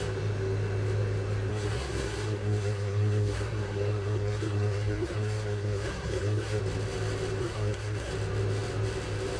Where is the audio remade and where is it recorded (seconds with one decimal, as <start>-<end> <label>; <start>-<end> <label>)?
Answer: 0.0-1.5 recorded; 1.5-6.6 remade; 6.6-7.4 recorded; 7.4-8.1 remade; 8.1-9.4 recorded